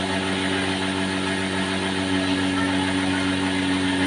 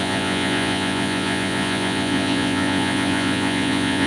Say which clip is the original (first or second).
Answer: first